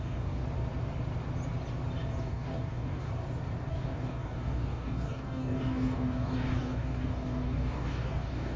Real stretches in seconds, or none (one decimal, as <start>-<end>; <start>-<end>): 0.4-2.2; 3.1-3.7